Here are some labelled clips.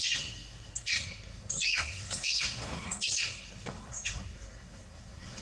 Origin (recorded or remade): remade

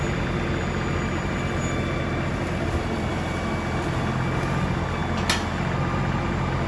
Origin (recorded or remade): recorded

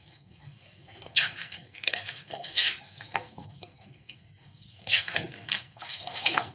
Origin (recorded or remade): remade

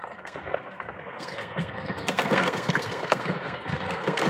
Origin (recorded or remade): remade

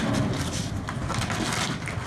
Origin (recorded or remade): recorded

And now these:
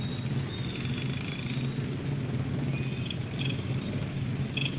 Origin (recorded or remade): recorded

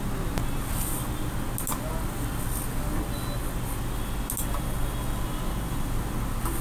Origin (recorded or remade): recorded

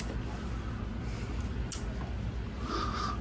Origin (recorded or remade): recorded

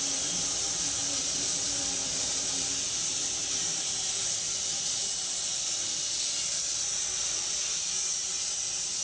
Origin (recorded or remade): recorded